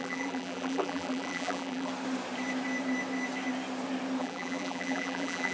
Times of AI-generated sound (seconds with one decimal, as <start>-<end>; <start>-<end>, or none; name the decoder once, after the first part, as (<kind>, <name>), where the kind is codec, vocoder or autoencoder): 0.0-1.9 (vocoder, BigVGAN v2); 4.2-5.5